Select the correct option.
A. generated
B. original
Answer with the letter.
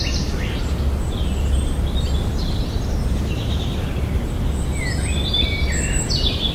B